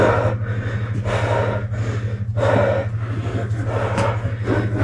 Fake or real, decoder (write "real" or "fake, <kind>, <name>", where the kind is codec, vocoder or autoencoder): real